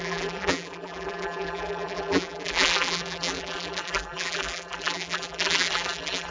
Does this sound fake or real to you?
fake